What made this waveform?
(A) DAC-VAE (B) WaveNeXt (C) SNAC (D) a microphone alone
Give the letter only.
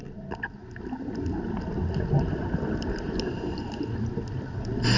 D